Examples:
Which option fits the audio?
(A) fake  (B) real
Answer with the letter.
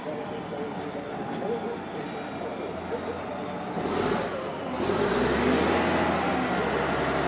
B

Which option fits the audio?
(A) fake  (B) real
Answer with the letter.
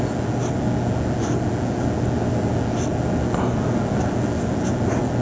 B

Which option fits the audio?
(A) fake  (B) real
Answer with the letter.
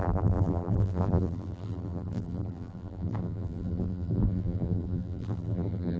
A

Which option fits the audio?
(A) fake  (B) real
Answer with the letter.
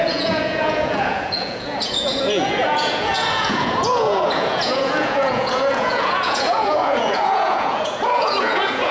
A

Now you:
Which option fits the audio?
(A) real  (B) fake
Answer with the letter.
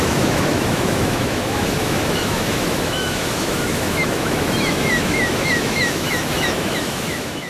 B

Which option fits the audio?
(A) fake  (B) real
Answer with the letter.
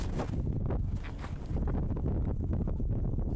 B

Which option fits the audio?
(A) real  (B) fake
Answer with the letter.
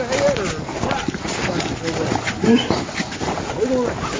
A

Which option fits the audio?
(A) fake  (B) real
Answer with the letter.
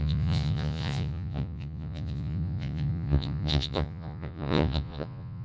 A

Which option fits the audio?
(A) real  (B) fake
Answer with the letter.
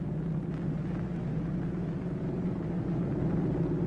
A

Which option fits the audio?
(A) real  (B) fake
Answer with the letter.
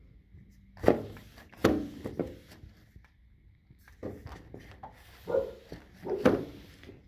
A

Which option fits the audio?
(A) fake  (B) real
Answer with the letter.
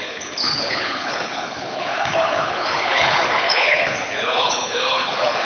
A